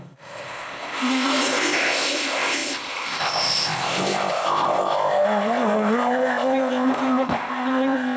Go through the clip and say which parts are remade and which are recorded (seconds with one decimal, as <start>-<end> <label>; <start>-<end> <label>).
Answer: 0.0-8.2 remade